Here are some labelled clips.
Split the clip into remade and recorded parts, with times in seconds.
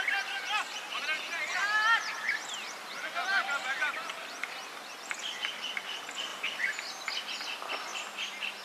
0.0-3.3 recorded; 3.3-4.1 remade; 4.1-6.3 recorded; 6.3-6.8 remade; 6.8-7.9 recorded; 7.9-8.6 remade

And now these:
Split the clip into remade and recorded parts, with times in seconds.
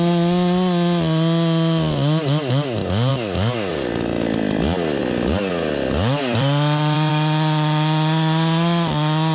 0.0-3.1 recorded; 3.1-3.7 remade; 3.7-6.2 recorded; 6.2-7.1 remade; 7.1-9.3 recorded